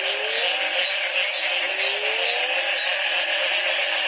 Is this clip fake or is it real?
real